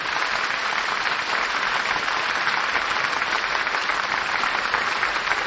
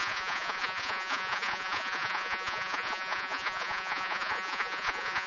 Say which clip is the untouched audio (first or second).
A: first